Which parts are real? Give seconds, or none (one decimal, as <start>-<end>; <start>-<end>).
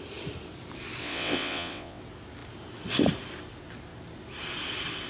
0.0-1.0; 2.0-5.1